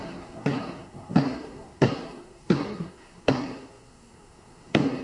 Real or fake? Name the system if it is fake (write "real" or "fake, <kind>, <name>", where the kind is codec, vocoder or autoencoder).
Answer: fake, codec, SNAC